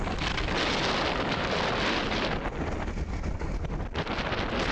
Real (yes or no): yes